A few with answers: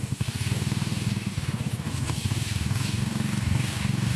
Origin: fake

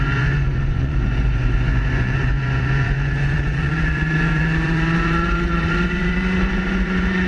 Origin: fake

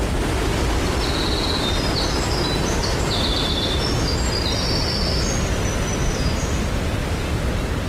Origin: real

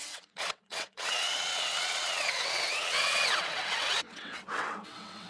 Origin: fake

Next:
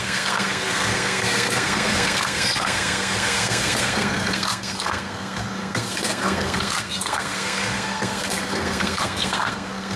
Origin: fake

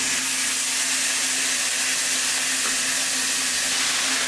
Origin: real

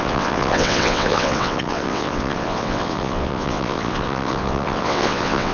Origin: fake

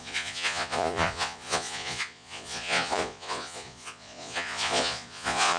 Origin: fake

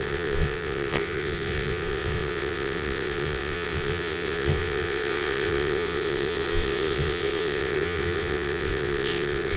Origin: fake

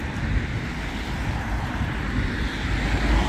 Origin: real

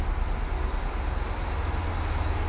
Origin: real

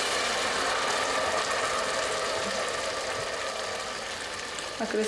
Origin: real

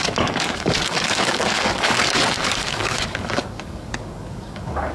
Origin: fake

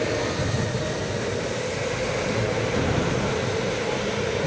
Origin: real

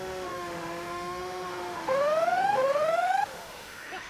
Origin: fake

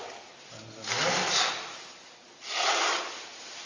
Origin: real